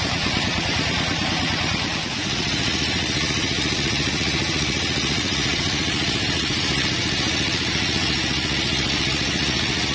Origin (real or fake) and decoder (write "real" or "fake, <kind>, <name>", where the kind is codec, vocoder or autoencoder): fake, vocoder, Vocos